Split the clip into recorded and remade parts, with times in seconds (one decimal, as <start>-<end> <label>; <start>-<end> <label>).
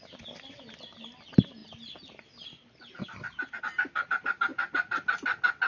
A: 0.0-4.5 remade; 4.5-5.7 recorded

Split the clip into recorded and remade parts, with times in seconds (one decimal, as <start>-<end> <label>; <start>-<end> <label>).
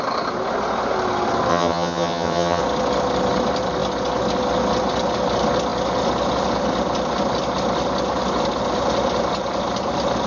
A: 0.0-1.5 recorded; 1.5-2.6 remade; 2.6-10.3 recorded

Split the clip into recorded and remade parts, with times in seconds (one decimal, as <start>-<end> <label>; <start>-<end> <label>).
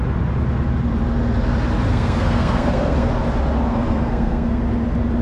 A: 0.0-1.9 recorded; 1.9-3.1 remade; 3.1-3.7 recorded; 3.7-4.6 remade; 4.6-5.2 recorded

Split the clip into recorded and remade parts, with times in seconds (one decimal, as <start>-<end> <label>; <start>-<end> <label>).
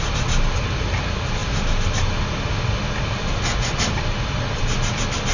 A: 0.0-5.3 recorded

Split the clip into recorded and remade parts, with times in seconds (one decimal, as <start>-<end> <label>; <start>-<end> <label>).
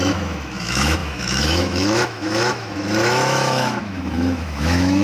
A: 0.0-5.0 remade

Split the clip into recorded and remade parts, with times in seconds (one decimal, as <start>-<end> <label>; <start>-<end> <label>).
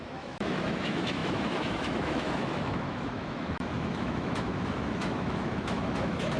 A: 0.0-6.4 remade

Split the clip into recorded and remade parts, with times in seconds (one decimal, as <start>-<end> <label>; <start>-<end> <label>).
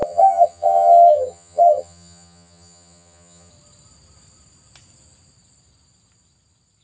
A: 0.0-3.5 remade; 3.5-6.8 recorded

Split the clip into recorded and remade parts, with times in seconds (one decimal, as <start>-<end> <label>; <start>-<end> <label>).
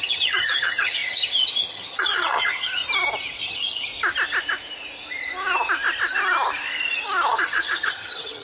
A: 0.0-2.8 remade; 2.8-3.4 recorded; 3.4-3.9 remade; 3.9-7.3 recorded; 7.3-8.4 remade